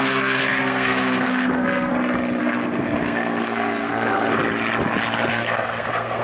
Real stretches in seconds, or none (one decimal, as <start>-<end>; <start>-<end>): 1.9-2.4; 4.4-5.3